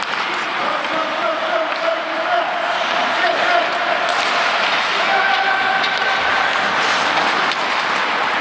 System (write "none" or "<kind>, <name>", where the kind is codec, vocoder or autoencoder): none